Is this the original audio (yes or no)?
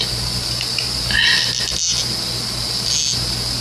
yes